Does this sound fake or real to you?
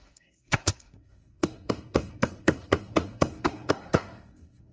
fake